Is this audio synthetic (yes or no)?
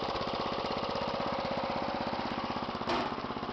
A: no